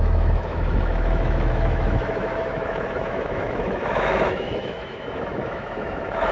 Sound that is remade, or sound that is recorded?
remade